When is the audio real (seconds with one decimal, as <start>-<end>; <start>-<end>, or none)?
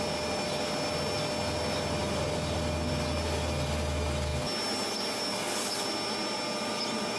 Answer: 0.0-7.2